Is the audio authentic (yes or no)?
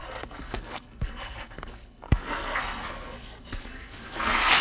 no